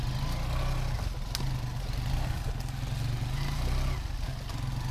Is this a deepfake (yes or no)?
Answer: no